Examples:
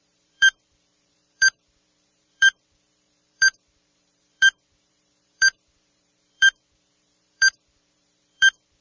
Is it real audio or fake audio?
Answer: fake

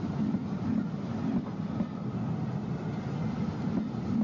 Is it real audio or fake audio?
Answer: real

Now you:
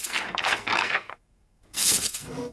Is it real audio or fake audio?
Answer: fake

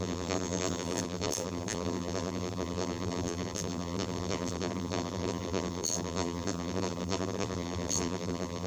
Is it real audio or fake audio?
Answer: fake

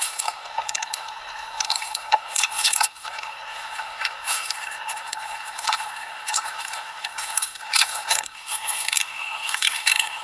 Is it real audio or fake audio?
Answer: fake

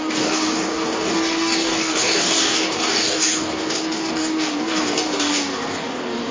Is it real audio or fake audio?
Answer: fake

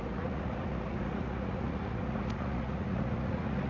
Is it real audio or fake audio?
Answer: fake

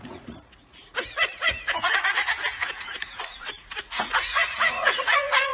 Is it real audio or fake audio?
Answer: fake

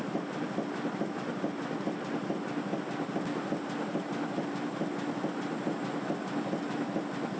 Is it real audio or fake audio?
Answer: real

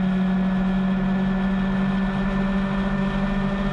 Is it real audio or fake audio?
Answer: real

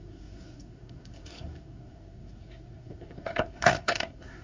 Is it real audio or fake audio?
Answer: fake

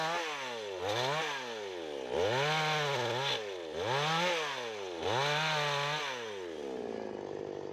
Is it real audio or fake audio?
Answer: real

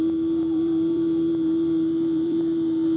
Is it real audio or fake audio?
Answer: fake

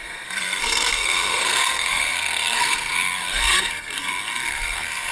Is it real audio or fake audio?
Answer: fake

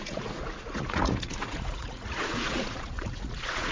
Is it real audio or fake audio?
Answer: fake